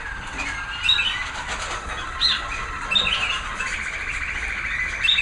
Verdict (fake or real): real